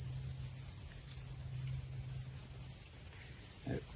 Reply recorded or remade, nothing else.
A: recorded